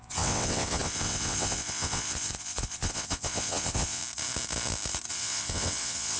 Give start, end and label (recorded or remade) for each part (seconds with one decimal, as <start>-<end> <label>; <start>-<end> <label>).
0.0-4.0 remade; 4.0-5.1 recorded; 5.1-6.2 remade

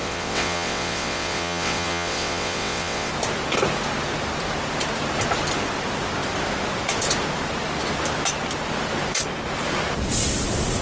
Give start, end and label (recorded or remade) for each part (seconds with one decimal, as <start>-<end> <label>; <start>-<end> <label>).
0.0-3.1 remade; 3.1-10.8 recorded

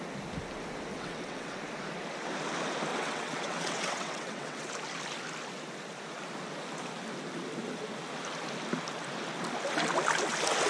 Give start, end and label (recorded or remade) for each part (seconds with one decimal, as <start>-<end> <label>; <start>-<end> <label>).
0.0-0.9 recorded; 0.9-1.6 remade; 1.6-2.9 recorded; 2.9-4.7 remade; 4.7-10.7 recorded

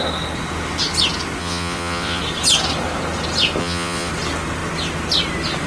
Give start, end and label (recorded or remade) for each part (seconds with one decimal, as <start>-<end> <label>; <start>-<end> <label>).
0.0-1.4 recorded; 1.4-2.2 remade; 2.2-3.6 recorded; 3.6-4.1 remade; 4.1-5.7 recorded